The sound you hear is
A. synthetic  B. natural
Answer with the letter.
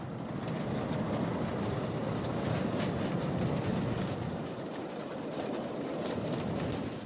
B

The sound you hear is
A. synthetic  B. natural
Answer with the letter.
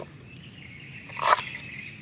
B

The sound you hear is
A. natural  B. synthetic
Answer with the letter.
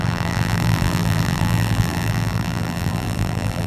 B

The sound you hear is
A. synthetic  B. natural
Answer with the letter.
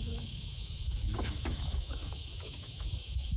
A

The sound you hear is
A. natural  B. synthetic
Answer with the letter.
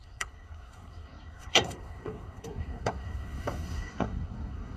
B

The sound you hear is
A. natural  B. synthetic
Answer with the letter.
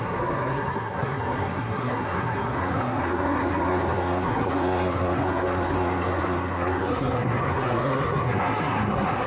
B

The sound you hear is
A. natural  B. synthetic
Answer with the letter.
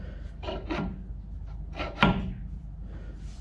B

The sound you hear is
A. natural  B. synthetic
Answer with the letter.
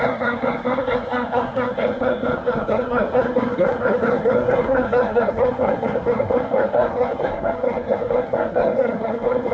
B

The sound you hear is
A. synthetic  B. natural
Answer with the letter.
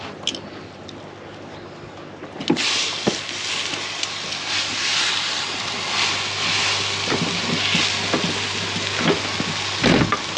B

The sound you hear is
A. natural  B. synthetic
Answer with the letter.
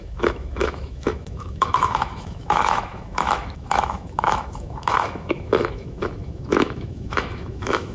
B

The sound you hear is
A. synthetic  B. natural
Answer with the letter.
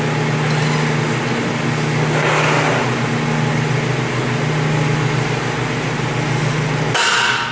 B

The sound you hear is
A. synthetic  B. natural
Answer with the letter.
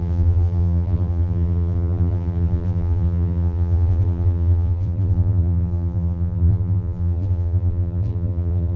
A